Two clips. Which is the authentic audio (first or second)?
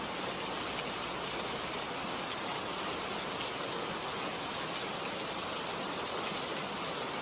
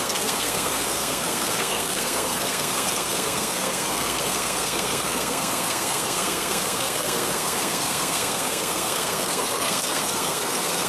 first